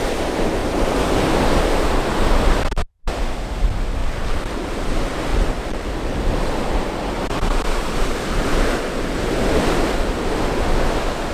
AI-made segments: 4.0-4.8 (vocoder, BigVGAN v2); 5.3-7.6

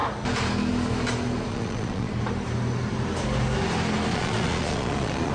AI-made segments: 1.5-2.1 (vocoder, Vocos); 4.1-5.3

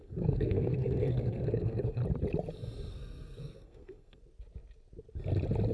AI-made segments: 0.0-2.0 (codec, SNAC); 2.9-4.2

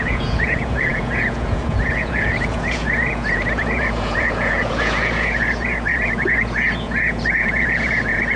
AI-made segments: 0.0-8.4 (vocoder, Vocos)